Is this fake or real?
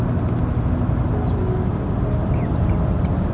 real